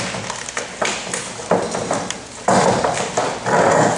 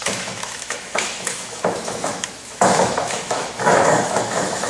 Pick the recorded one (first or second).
first